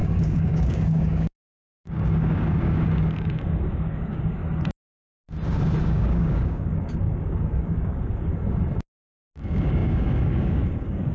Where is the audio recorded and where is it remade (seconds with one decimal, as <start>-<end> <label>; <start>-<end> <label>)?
0.0-4.4 remade; 4.4-5.8 recorded; 5.8-8.3 remade; 8.3-9.4 recorded; 9.4-11.1 remade